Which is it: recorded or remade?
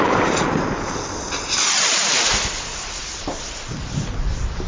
recorded